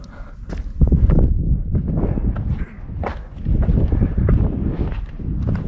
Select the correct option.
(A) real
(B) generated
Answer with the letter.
A